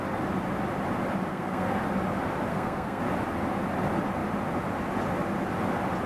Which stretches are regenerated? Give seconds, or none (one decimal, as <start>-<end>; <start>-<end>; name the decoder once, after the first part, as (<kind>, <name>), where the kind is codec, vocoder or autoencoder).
1.3-1.8 (codec, SNAC); 2.5-3.0